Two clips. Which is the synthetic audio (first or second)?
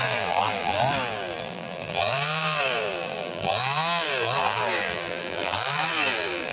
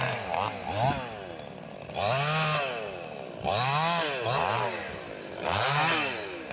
first